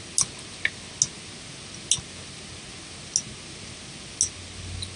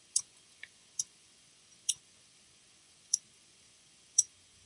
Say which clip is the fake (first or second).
second